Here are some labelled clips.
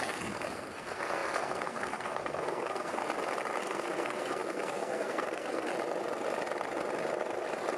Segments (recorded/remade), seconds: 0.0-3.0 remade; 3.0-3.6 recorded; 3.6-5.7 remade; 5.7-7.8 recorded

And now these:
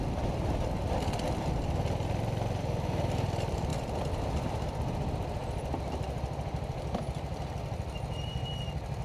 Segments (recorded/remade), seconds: 0.0-3.7 recorded; 3.7-4.2 remade; 4.2-9.0 recorded

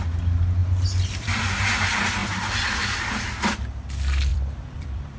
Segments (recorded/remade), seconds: 0.0-0.6 recorded; 0.6-1.5 remade; 1.5-4.3 recorded; 4.3-5.2 remade

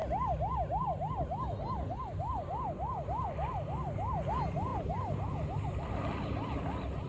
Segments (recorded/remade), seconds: 0.0-7.1 recorded

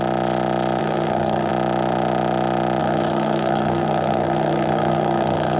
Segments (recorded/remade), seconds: 0.0-0.8 recorded; 0.8-1.5 remade; 1.5-2.8 recorded; 2.8-5.6 remade

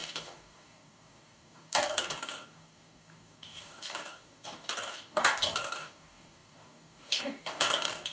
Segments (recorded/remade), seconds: 0.0-8.1 remade

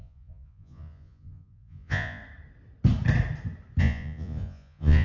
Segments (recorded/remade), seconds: 0.0-2.2 remade; 2.2-3.8 recorded; 3.8-5.0 remade

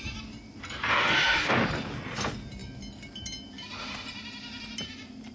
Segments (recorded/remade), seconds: 0.0-0.9 recorded; 0.9-1.5 remade; 1.5-5.3 recorded